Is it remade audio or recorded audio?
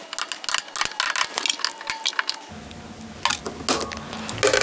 recorded